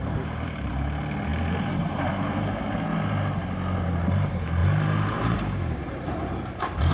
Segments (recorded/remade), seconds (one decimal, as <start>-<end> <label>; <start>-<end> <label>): 0.0-0.7 remade; 0.7-1.3 recorded; 1.3-2.7 remade; 2.7-4.6 recorded; 4.6-6.9 remade